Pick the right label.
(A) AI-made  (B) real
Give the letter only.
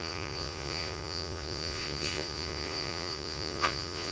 A